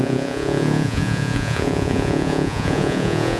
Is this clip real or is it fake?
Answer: fake